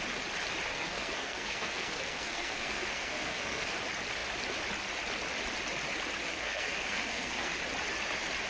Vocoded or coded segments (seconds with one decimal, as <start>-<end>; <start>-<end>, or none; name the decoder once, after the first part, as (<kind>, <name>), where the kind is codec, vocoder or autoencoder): 0.7-3.8 (codec, SNAC); 6.3-7.5